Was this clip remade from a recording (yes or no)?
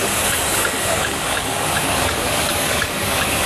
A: yes